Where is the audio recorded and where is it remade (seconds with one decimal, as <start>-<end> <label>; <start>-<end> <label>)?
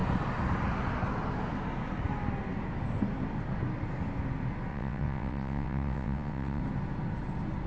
0.0-4.7 recorded; 4.7-6.6 remade; 6.6-7.7 recorded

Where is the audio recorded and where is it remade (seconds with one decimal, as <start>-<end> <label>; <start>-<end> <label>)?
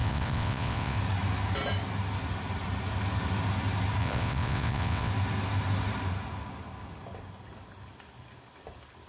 0.0-1.0 remade; 1.0-4.0 recorded; 4.0-5.1 remade; 5.1-9.1 recorded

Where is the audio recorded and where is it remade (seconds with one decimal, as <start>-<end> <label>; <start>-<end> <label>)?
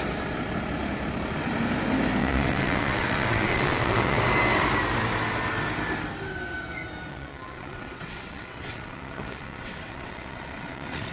0.0-2.2 recorded; 2.2-4.2 remade; 4.2-7.1 recorded; 7.1-11.1 remade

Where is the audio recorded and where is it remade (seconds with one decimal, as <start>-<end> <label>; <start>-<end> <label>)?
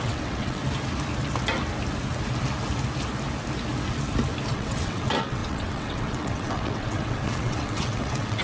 0.0-0.6 remade; 0.6-4.5 recorded; 4.5-8.4 remade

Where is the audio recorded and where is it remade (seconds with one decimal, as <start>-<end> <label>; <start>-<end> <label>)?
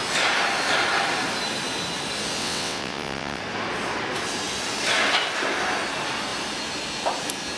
0.0-2.4 recorded; 2.4-3.4 remade; 3.4-7.6 recorded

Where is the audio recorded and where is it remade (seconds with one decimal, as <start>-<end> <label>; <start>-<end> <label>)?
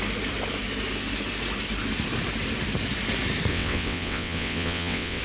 0.0-3.5 recorded; 3.5-5.2 remade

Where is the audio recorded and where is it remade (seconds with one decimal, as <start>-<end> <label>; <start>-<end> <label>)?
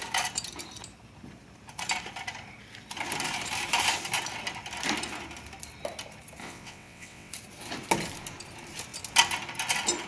0.0-6.4 recorded; 6.4-7.3 remade; 7.3-10.1 recorded